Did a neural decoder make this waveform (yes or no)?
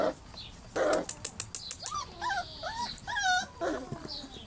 no